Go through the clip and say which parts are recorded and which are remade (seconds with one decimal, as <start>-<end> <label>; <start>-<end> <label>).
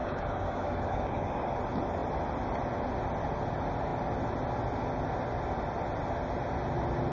0.0-1.6 remade; 1.6-7.1 recorded